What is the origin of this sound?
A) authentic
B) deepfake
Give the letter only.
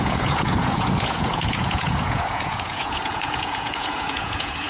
B